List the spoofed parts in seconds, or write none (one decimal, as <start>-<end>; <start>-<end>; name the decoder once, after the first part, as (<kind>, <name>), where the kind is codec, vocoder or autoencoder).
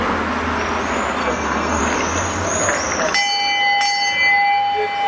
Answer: 1.2-1.8 (codec, SNAC)